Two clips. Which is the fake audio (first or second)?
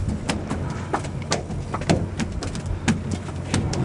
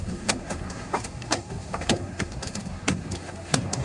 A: second